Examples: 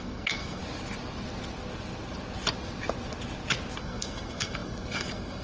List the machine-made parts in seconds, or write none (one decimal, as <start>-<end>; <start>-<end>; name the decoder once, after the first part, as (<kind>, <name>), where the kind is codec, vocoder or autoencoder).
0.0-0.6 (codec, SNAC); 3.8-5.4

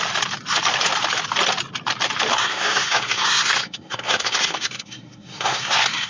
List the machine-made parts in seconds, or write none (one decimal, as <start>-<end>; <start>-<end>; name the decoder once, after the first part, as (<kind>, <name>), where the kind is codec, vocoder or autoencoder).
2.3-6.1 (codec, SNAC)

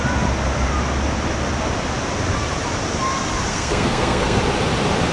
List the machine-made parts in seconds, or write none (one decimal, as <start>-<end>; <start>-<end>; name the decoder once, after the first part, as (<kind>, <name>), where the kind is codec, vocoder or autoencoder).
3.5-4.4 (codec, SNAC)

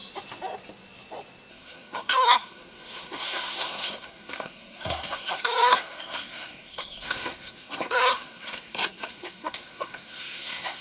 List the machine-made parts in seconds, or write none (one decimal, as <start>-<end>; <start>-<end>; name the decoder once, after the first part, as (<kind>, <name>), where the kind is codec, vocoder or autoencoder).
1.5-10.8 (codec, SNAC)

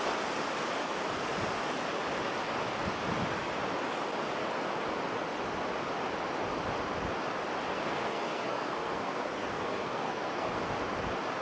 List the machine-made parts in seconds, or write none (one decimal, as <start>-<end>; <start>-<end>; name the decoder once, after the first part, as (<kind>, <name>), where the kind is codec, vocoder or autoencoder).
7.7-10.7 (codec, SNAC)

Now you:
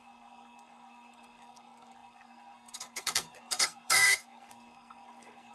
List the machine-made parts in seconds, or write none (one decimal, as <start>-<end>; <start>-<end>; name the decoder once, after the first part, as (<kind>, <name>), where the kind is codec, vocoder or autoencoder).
0.0-5.5 (codec, SNAC)